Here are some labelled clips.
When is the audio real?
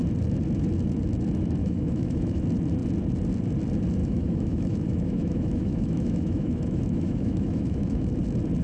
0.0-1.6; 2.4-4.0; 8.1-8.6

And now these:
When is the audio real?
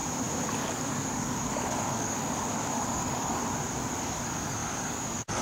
0.0-0.6; 3.4-4.0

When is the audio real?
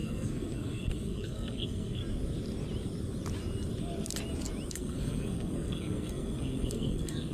2.0-4.7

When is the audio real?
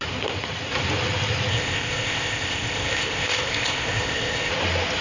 0.0-1.5; 4.5-5.0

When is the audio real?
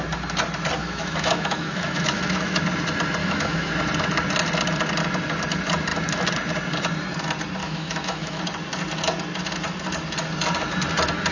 0.0-0.8; 2.6-3.2; 3.7-7.6; 8.4-11.3